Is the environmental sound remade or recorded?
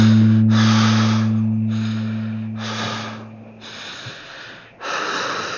recorded